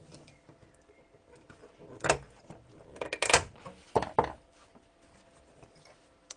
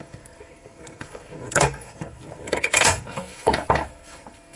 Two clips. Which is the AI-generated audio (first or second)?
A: second